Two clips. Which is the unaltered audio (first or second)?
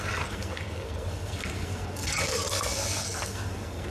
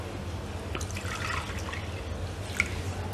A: second